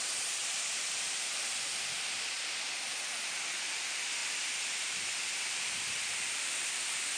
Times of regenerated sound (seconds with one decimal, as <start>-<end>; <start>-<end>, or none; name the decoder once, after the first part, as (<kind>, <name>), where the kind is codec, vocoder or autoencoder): 0.4-3.1 (vocoder, BigVGAN v2); 4.2-7.2